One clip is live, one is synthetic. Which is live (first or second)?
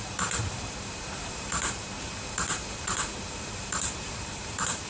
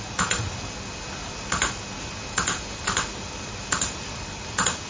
second